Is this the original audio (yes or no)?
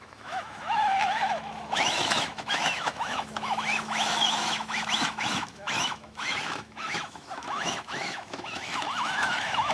no